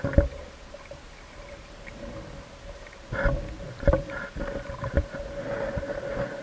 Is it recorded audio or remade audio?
recorded